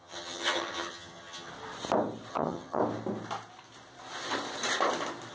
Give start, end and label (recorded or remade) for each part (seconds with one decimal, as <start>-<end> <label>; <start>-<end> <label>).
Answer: 0.0-1.5 remade; 1.5-2.3 recorded; 2.3-2.8 remade; 2.8-5.3 recorded